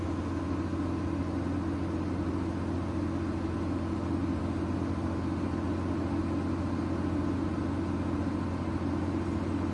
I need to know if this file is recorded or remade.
recorded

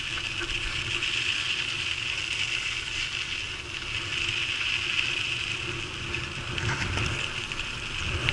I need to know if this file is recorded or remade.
recorded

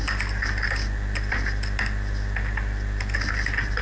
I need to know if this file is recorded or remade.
recorded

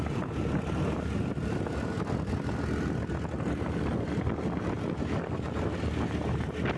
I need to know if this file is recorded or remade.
recorded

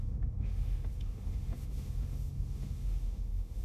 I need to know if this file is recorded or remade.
remade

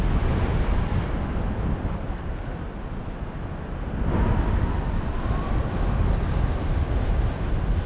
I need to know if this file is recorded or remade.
recorded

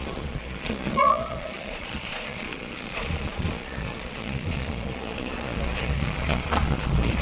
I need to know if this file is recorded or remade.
remade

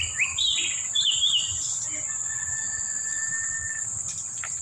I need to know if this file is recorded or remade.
recorded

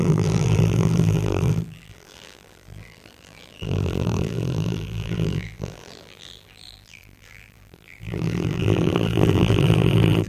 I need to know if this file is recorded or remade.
remade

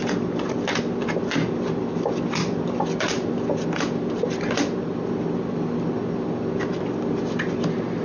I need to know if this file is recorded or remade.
recorded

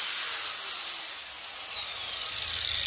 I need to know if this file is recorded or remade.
recorded